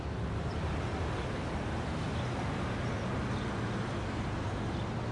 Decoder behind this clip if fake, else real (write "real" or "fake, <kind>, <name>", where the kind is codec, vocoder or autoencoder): real